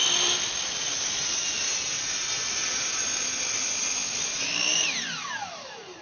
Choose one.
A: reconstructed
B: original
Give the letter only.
B